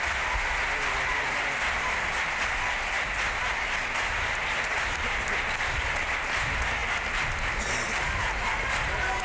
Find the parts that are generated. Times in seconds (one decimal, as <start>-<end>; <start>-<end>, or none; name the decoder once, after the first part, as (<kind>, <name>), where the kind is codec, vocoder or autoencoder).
none